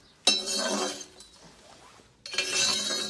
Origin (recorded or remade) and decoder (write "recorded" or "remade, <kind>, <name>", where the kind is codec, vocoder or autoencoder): recorded